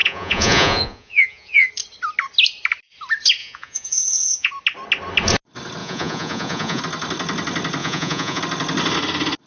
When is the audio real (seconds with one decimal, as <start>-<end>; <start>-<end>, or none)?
1.7-3.4; 4.5-5.8; 6.8-7.8; 8.4-9.5

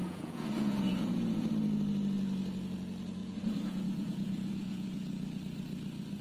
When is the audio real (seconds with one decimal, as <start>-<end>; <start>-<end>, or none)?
1.5-3.2; 5.4-6.2

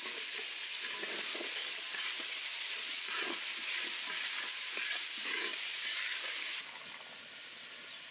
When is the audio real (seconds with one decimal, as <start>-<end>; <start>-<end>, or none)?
0.0-1.3; 3.8-8.1

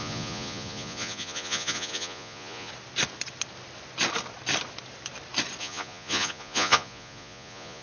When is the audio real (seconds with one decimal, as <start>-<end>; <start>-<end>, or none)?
2.7-5.6

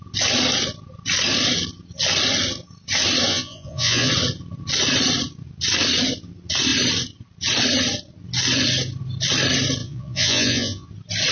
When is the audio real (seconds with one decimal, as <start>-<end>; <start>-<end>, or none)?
0.0-3.3; 4.1-9.8; 10.9-11.3

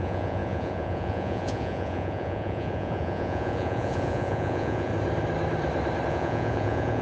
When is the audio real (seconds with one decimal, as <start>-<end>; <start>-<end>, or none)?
4.9-6.1